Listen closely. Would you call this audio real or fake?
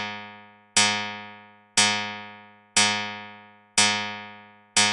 real